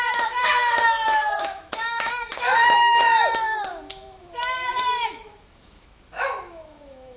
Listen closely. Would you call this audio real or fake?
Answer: fake